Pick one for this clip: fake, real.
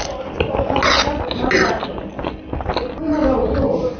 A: real